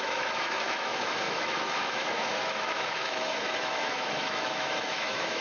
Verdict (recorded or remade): remade